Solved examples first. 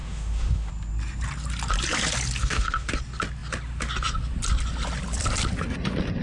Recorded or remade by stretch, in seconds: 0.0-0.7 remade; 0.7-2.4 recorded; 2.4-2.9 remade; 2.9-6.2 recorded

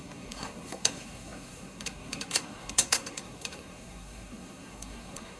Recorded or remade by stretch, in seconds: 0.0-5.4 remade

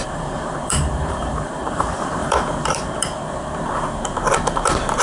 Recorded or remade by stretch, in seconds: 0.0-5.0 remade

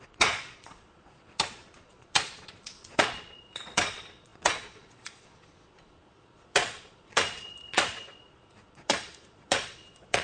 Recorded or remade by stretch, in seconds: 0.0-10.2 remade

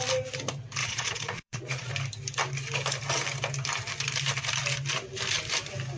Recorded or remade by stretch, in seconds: 0.0-0.8 recorded; 0.8-1.9 remade; 1.9-6.0 recorded

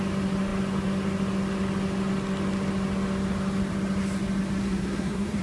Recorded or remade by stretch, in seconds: 0.0-4.6 recorded; 4.6-5.4 remade

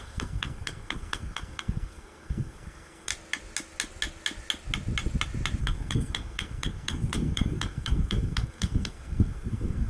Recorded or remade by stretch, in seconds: 0.0-3.1 remade; 3.1-5.6 recorded; 5.6-9.9 remade

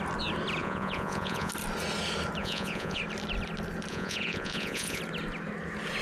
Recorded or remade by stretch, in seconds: 0.0-0.6 recorded; 0.6-1.5 remade; 1.5-2.4 recorded; 2.4-3.0 remade; 3.0-3.9 recorded; 3.9-5.0 remade; 5.0-6.0 recorded